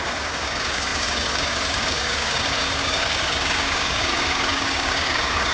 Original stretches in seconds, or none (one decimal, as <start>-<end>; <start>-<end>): none